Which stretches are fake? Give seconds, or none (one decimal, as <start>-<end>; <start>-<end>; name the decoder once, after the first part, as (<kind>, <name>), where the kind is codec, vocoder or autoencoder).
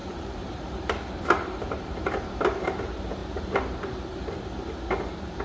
0.0-2.8 (vocoder, BigVGAN v2); 3.2-3.8